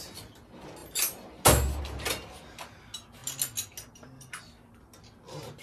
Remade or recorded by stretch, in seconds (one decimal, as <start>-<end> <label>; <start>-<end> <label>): 0.0-5.6 recorded